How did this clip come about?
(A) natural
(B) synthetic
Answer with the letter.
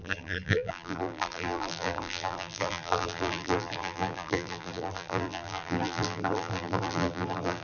B